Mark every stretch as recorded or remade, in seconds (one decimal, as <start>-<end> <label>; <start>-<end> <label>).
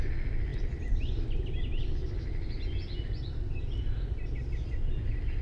0.0-5.4 recorded